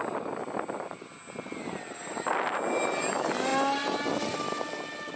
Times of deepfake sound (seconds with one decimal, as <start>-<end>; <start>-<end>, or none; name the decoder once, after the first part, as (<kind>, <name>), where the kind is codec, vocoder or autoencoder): none